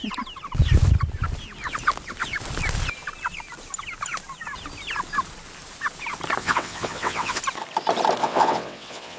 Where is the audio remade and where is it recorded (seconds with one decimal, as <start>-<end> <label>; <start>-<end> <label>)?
0.0-6.4 recorded; 6.4-7.4 remade; 7.4-8.2 recorded; 8.2-9.2 remade